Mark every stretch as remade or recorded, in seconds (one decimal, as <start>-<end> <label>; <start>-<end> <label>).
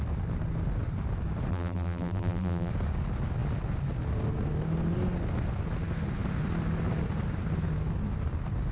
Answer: 0.0-1.5 recorded; 1.5-2.7 remade; 2.7-8.7 recorded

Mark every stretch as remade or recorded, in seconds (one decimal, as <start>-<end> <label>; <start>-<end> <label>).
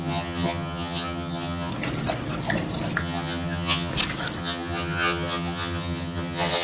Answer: 0.0-1.7 remade; 1.7-3.0 recorded; 3.0-3.9 remade; 3.9-4.4 recorded; 4.4-6.6 remade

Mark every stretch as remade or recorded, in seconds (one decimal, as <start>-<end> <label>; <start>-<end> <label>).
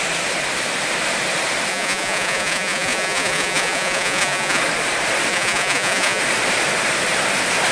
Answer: 0.0-1.7 recorded; 1.7-4.6 remade; 4.6-5.3 recorded; 5.3-6.2 remade; 6.2-7.7 recorded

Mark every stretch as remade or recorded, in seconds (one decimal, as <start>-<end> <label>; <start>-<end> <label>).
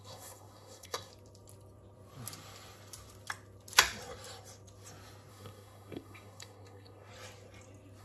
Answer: 0.0-1.1 remade; 1.1-5.3 recorded; 5.3-7.1 remade; 7.1-8.0 recorded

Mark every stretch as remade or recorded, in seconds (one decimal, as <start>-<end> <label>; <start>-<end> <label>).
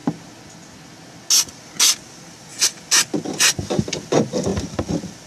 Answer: 0.0-4.5 recorded; 4.5-5.3 remade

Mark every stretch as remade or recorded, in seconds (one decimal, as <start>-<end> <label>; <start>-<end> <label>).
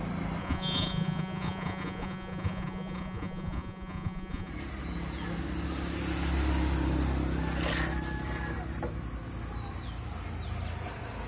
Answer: 0.0-0.4 recorded; 0.4-4.5 remade; 4.5-11.3 recorded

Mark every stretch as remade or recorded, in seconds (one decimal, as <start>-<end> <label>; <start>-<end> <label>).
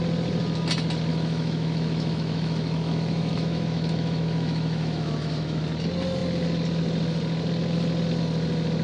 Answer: 0.0-1.1 recorded; 1.1-5.6 remade; 5.6-8.8 recorded